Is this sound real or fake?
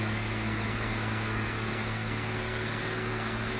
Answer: fake